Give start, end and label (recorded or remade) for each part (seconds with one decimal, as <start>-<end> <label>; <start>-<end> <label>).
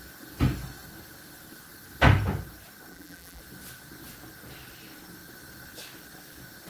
0.0-2.9 recorded; 2.9-3.4 remade; 3.4-6.7 recorded